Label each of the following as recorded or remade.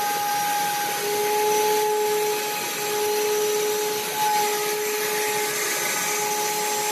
recorded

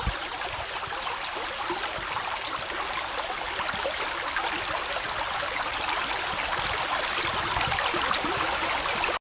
recorded